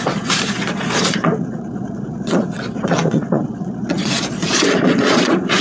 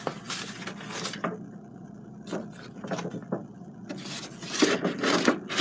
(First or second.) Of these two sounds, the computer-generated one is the first